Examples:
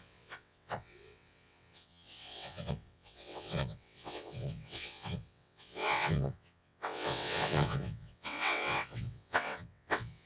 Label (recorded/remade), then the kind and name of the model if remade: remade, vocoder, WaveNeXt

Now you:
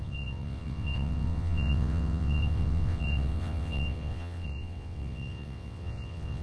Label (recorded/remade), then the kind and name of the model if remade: remade, vocoder, WaveNeXt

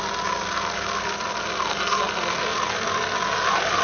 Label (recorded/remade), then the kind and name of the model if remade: recorded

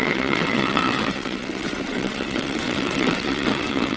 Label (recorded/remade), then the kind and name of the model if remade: remade, vocoder, WaveNeXt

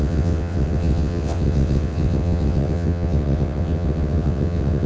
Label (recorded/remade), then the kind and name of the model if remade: remade, vocoder, WaveNeXt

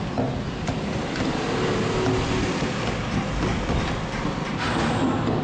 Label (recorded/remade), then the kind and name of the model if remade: recorded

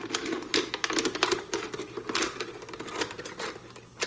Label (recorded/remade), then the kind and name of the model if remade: recorded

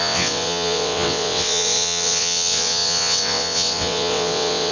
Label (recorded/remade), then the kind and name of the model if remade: remade, vocoder, WaveNeXt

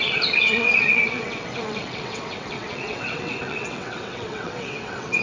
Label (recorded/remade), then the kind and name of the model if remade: remade, vocoder, WaveNeXt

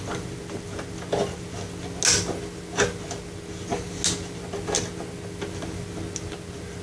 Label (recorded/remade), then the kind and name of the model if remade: recorded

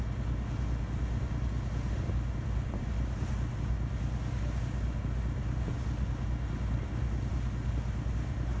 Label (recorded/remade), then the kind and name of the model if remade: recorded